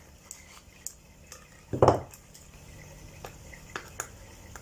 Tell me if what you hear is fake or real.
real